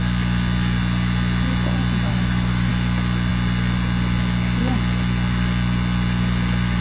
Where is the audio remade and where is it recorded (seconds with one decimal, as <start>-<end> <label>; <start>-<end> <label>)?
0.0-2.1 recorded; 2.1-2.7 remade; 2.7-6.8 recorded